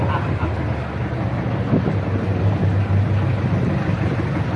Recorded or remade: recorded